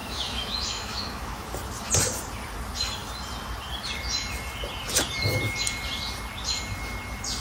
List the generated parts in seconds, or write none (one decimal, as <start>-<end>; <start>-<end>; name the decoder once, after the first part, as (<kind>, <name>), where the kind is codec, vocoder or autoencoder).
0.0-1.5 (autoencoder, DAC-VAE)